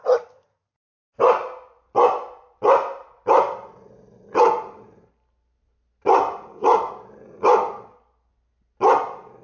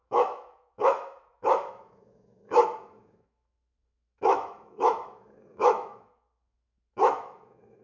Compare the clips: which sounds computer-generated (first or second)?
second